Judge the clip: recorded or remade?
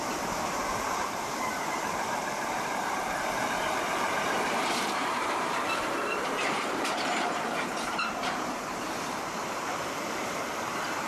remade